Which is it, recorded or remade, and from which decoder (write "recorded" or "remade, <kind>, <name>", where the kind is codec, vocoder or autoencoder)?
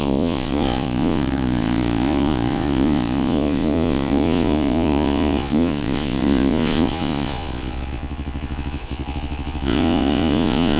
remade, vocoder, Vocos